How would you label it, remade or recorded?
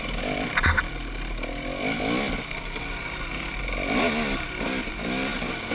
recorded